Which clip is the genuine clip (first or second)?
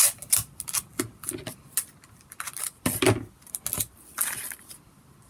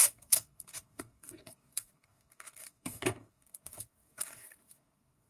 first